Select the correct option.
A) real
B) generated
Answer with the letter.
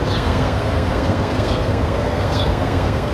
B